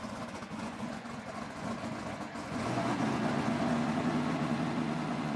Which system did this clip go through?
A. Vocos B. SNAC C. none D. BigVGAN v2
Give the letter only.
A